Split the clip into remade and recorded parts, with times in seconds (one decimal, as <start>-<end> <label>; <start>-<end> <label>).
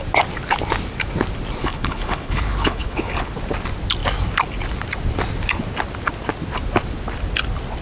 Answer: 0.0-1.6 recorded; 1.6-3.3 remade; 3.3-7.8 recorded